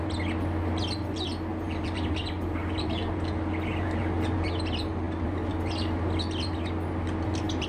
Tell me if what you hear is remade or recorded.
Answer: recorded